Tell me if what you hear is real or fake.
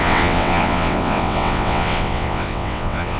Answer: fake